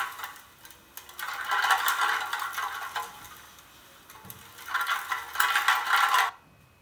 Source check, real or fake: real